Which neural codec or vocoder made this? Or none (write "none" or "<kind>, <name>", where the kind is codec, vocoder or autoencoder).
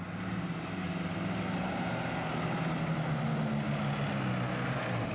none